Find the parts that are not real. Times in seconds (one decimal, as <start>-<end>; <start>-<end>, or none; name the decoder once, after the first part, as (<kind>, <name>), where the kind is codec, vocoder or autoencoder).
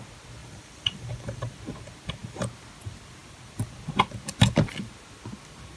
0.4-1.5 (vocoder, BigVGAN v2)